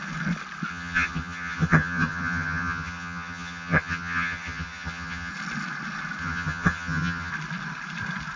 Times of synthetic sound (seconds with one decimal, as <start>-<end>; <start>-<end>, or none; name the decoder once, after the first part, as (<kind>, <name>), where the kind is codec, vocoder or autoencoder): 0.7-5.3 (vocoder, HiFi-GAN); 6.2-7.3